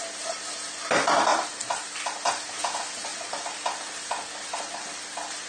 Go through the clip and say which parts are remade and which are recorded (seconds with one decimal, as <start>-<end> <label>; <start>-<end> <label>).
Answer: 0.0-1.3 recorded; 1.3-2.3 remade; 2.3-3.1 recorded; 3.1-5.0 remade; 5.0-5.5 recorded